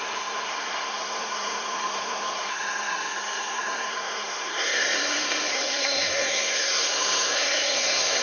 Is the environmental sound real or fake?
fake